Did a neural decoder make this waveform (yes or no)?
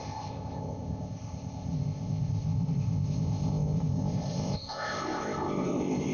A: yes